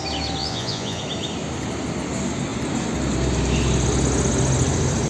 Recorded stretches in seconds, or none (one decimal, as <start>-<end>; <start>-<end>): 0.0-0.4; 1.0-5.1